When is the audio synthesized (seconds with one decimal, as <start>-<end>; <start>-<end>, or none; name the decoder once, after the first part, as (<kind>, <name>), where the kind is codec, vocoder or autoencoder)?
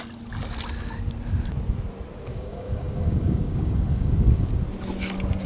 2.3-4.5 (codec, DAC)